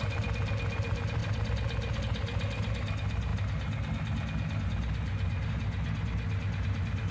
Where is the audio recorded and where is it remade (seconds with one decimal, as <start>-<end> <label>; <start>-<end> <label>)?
0.0-7.1 recorded